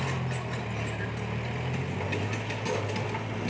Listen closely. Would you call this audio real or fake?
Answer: real